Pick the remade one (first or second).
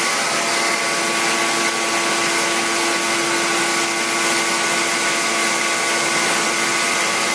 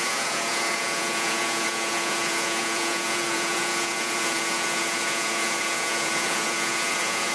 second